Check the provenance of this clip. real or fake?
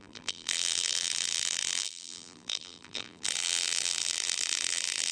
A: fake